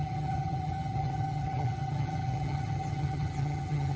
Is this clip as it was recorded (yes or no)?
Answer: no